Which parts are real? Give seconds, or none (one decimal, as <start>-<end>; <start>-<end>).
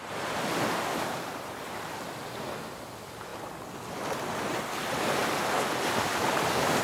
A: 3.3-4.5